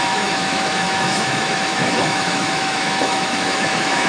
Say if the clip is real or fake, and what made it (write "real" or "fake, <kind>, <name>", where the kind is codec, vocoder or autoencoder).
fake, autoencoder, DAC-VAE